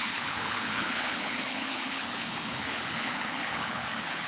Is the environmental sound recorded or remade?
remade